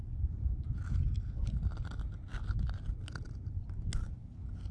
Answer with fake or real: real